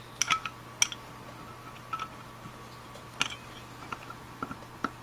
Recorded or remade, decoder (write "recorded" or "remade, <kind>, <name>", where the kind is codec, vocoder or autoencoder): recorded